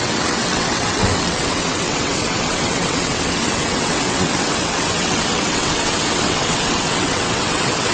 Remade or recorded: remade